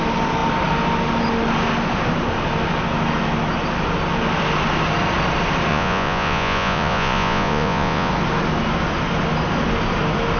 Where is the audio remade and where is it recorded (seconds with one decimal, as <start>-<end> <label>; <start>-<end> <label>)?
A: 0.0-5.7 recorded; 5.7-8.1 remade; 8.1-10.4 recorded